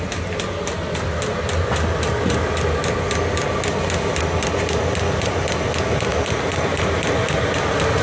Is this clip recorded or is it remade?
recorded